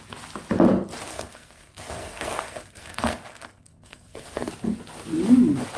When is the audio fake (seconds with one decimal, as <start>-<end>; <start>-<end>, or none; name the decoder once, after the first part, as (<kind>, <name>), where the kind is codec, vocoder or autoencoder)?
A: 1.1-4.5 (codec, SNAC)